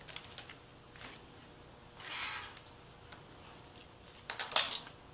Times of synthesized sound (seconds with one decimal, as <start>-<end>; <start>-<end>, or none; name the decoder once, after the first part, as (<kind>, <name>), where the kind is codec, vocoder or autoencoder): 3.8-4.5 (vocoder, BigVGAN v2)